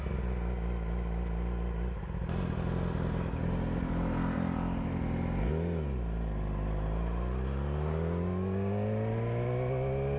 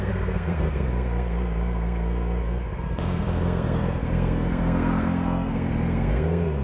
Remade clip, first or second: second